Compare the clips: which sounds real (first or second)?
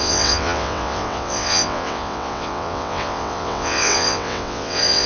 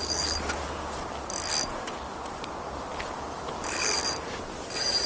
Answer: second